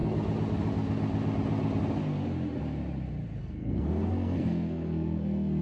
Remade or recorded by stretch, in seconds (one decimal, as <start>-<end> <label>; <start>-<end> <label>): 0.0-3.4 recorded; 3.4-5.6 remade